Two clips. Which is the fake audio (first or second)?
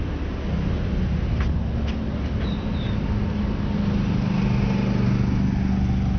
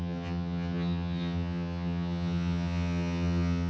second